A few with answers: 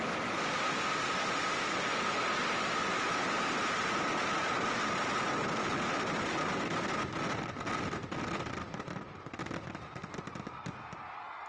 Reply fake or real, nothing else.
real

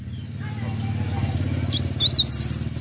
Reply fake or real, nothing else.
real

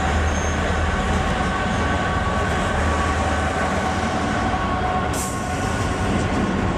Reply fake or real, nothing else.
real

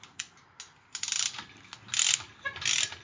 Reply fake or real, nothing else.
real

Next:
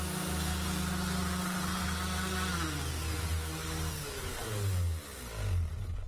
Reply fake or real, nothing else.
real